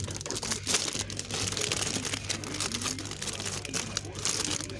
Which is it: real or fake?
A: real